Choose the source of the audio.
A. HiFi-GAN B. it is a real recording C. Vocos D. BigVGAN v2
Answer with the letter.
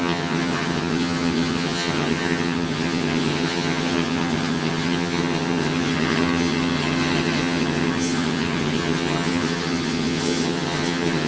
A